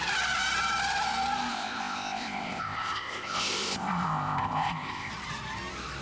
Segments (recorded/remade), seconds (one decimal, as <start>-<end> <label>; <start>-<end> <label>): 0.0-1.5 recorded; 1.5-5.1 remade; 5.1-6.0 recorded